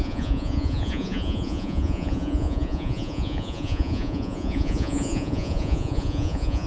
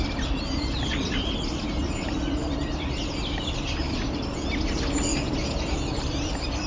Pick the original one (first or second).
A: second